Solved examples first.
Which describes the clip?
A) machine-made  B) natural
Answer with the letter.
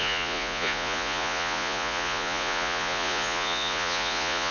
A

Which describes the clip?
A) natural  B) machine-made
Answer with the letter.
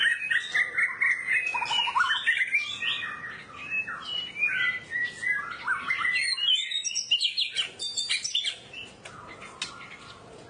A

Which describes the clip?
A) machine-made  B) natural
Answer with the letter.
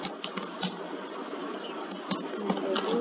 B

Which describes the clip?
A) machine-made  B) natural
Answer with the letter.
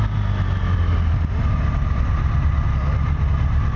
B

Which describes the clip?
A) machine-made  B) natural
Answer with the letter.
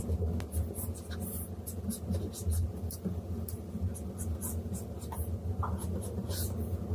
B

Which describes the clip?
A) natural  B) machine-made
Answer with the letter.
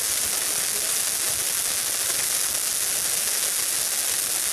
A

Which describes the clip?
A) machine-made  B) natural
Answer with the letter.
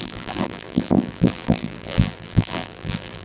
A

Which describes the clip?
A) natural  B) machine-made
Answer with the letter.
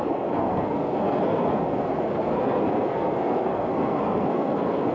B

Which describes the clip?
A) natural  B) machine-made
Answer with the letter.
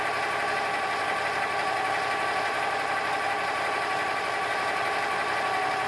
A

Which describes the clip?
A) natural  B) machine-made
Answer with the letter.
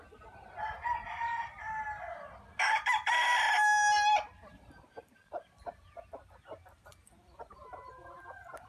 A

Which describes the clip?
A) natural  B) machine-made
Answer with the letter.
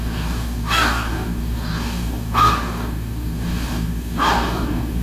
B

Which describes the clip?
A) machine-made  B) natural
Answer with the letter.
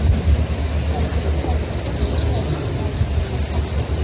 B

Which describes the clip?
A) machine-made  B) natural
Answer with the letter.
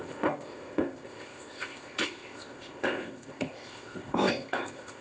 A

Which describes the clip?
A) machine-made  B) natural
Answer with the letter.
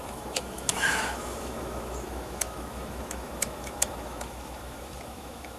A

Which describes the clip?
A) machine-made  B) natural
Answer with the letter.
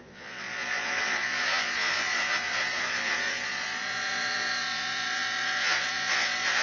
A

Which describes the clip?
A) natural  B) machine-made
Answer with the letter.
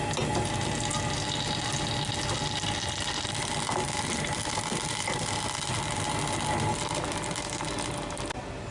A